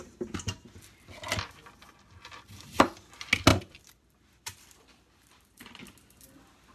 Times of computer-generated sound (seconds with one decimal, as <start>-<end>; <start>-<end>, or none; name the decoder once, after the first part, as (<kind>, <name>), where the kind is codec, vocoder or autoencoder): 3.5-5.8 (vocoder, BigVGAN v2)